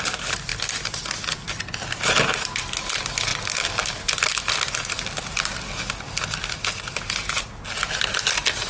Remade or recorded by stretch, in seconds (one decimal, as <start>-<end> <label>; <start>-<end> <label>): 0.0-8.7 recorded